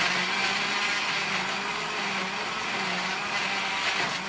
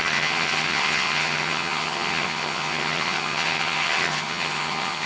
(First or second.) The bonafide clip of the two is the first